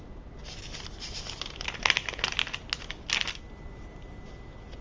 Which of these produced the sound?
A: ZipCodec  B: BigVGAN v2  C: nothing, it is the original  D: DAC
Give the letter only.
C